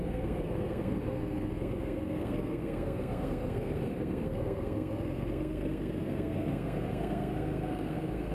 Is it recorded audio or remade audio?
remade